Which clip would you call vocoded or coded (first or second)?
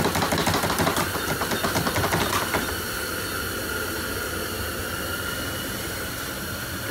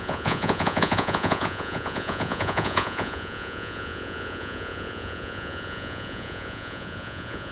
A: second